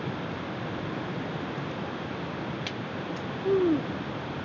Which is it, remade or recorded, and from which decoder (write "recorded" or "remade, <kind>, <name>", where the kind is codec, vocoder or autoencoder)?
recorded